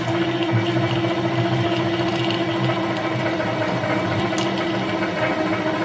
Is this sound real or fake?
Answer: real